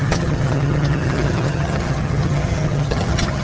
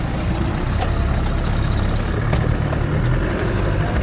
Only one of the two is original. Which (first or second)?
second